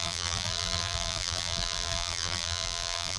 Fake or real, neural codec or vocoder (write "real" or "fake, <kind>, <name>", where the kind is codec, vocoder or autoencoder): fake, vocoder, BigVGAN v2